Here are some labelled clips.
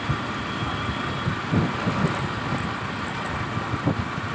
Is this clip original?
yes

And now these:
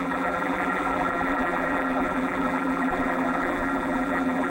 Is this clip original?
no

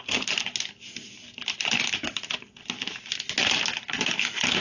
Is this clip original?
yes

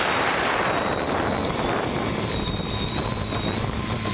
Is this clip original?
no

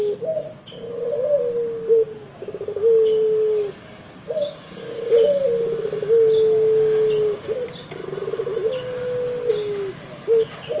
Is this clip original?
yes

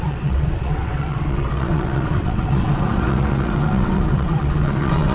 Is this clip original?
no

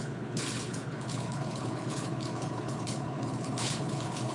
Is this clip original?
no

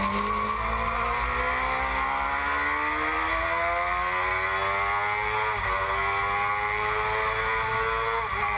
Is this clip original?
yes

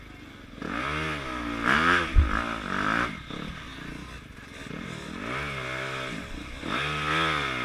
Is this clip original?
yes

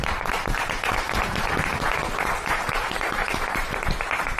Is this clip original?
no